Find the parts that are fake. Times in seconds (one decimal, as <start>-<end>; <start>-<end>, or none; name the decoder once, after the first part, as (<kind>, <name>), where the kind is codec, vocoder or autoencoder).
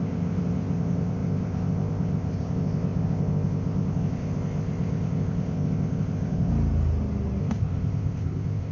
0.0-6.5 (codec, ZipCodec); 7.4-8.7